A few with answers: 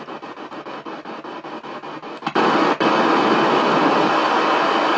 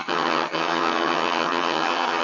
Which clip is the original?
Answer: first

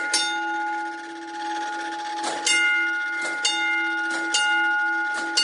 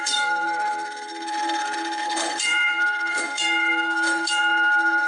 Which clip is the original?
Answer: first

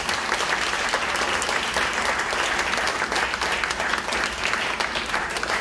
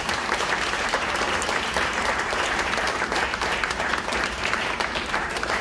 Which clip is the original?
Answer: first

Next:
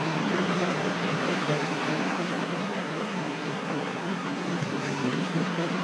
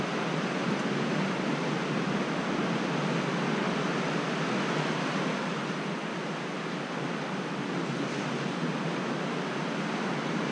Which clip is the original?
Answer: second